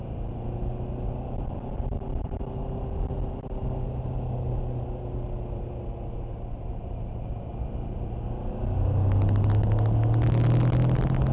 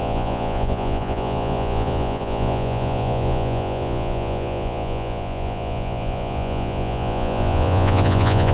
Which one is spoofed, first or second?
second